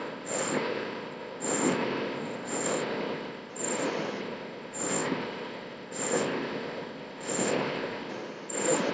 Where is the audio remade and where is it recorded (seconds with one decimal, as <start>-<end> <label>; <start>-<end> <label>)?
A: 0.0-3.5 remade; 3.5-4.2 recorded; 4.2-8.1 remade; 8.1-8.9 recorded